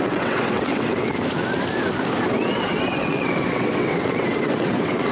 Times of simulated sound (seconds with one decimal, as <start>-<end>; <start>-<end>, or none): 0.0-1.1; 2.4-5.1